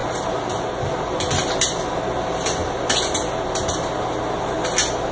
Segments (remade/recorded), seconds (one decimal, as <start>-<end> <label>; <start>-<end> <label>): 0.0-5.1 recorded